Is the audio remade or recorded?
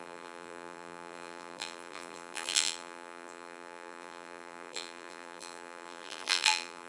remade